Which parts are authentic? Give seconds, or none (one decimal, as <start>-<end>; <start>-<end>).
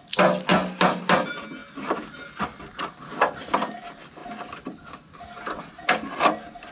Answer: 0.0-6.7